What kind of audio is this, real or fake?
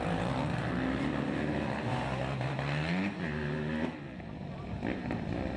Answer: real